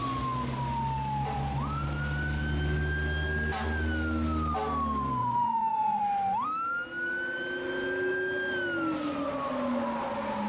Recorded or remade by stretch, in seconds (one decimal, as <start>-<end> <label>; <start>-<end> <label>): 0.0-5.2 recorded; 5.2-6.0 remade; 6.0-10.5 recorded